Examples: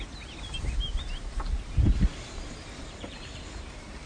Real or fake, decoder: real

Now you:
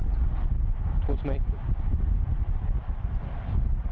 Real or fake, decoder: fake, vocoder, BigVGAN v2